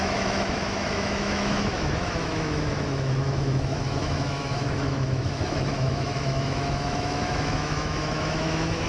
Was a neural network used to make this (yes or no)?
yes